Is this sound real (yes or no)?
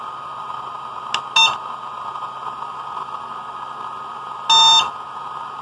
yes